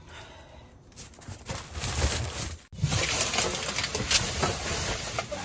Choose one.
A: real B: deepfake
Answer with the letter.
A